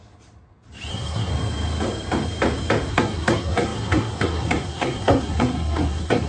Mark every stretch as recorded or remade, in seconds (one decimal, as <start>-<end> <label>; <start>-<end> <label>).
0.0-0.9 recorded; 0.9-1.3 remade; 1.3-2.9 recorded; 2.9-6.3 remade